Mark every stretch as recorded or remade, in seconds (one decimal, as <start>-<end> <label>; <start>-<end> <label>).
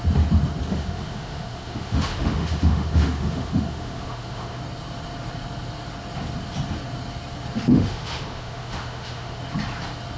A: 0.0-0.7 recorded; 0.7-4.6 remade; 4.6-7.7 recorded; 7.7-9.4 remade; 9.4-10.2 recorded